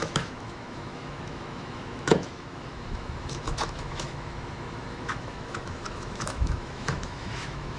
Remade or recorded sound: remade